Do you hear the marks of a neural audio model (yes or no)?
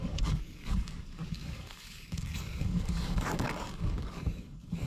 yes